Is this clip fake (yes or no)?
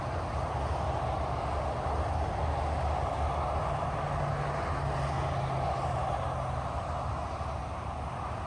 no